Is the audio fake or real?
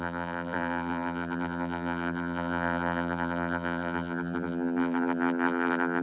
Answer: fake